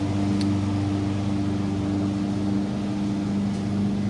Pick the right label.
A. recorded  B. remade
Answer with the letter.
A